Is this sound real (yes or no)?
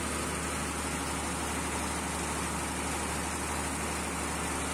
yes